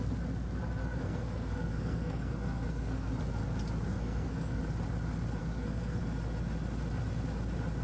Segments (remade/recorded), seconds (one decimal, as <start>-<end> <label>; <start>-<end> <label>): 0.0-0.8 recorded; 0.8-3.1 remade; 3.1-3.9 recorded; 3.9-4.6 remade; 4.6-5.4 recorded; 5.4-6.0 remade; 6.0-7.8 recorded